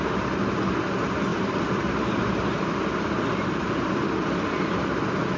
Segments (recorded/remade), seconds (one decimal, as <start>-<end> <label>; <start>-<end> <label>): 0.0-5.4 recorded